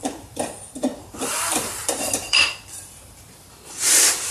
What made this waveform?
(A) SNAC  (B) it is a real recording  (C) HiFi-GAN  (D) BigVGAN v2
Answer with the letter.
D